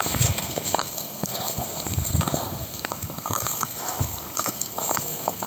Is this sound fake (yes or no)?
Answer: yes